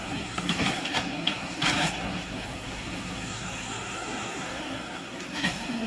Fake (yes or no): yes